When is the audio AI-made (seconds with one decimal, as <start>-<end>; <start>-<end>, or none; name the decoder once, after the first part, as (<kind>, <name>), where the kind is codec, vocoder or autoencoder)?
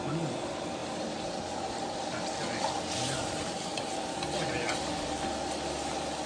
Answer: none